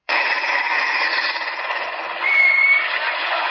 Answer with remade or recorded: remade